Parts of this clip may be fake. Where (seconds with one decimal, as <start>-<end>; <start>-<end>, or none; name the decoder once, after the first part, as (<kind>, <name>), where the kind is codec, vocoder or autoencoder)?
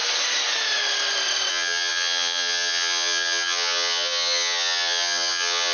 1.5-5.7 (vocoder, HiFi-GAN)